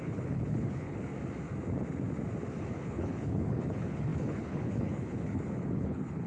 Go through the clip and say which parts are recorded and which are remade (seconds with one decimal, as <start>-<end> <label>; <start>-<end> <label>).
0.0-1.1 remade; 1.1-2.7 recorded; 2.7-6.3 remade